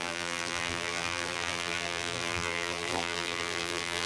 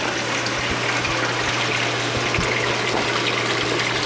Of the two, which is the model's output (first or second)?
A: first